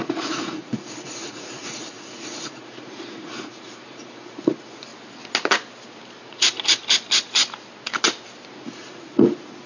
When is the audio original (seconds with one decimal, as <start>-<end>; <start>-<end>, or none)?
4.9-6.2; 6.8-8.5